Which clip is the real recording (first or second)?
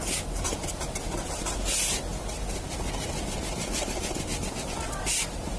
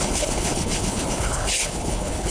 first